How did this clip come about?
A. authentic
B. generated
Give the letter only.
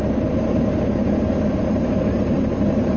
B